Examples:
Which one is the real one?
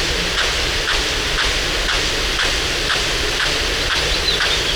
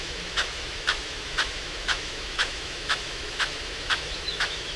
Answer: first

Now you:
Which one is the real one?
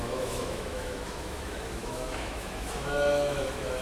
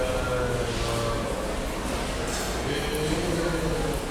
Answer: second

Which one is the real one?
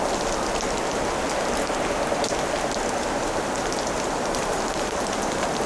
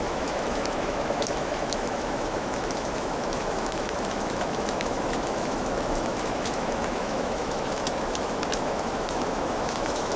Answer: first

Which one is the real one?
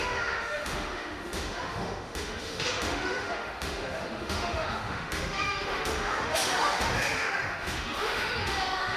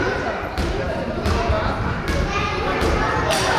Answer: second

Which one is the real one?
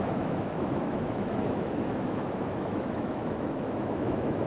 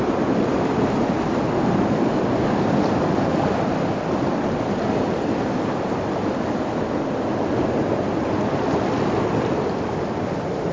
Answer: second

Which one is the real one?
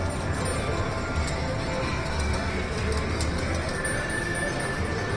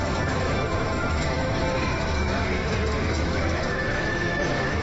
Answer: first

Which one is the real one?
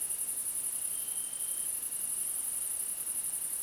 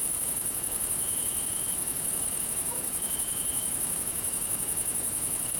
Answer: first